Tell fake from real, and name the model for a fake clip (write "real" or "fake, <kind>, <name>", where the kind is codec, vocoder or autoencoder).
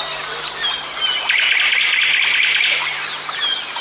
real